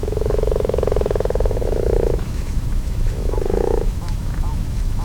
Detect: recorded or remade remade